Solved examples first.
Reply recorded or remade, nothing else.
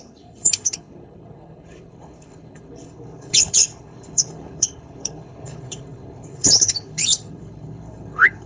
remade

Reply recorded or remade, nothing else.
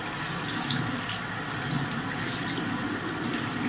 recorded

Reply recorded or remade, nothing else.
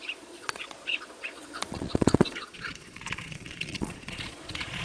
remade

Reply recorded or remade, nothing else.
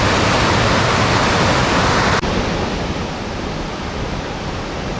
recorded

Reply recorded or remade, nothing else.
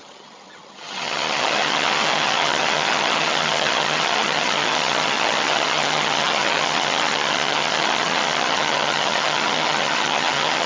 remade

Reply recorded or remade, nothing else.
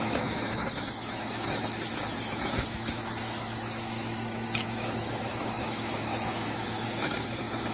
remade